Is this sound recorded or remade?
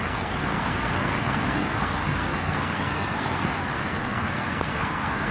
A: remade